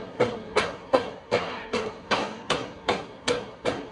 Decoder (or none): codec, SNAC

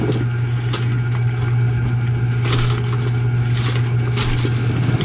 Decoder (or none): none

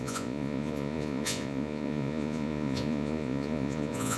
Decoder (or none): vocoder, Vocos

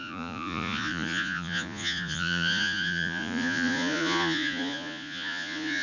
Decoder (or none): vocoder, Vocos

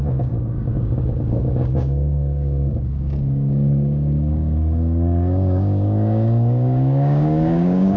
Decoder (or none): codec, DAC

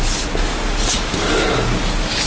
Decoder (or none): none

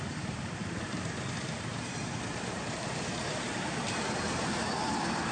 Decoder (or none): vocoder, BigVGAN v2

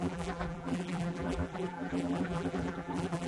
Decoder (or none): vocoder, BigVGAN v2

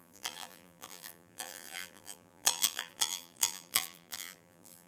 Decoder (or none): vocoder, BigVGAN v2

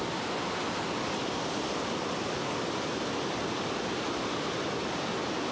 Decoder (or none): none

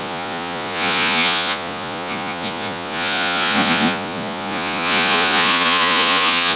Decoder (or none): vocoder, Vocos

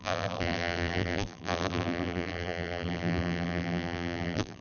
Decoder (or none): vocoder, BigVGAN v2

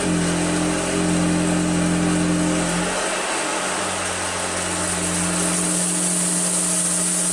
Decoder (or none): none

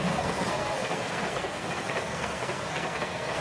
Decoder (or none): codec, SNAC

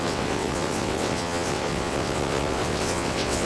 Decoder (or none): vocoder, WaveNeXt